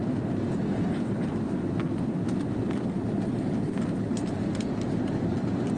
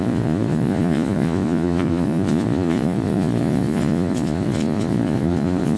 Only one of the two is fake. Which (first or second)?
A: second